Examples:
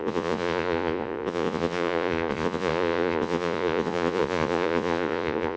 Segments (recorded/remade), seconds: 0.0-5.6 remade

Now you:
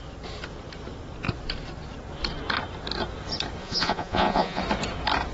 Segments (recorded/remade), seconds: 0.0-3.6 recorded; 3.6-4.6 remade; 4.6-5.3 recorded

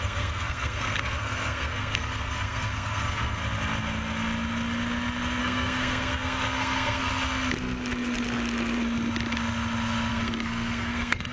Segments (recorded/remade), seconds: 0.0-3.4 remade; 3.4-5.4 recorded; 5.4-7.1 remade; 7.1-10.1 recorded; 10.1-11.3 remade

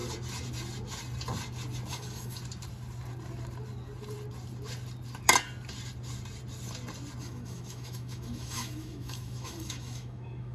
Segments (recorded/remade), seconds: 0.0-1.9 recorded; 1.9-2.4 remade; 2.4-7.2 recorded; 7.2-10.5 remade

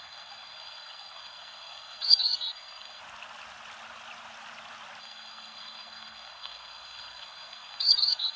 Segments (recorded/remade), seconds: 0.0-3.0 remade; 3.0-5.0 recorded; 5.0-8.4 remade